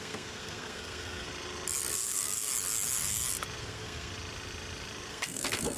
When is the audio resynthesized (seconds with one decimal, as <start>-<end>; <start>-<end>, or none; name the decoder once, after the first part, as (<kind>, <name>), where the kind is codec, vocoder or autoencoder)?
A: 0.0-1.3 (codec, SNAC); 1.9-2.5; 3.6-4.1; 5.1-5.8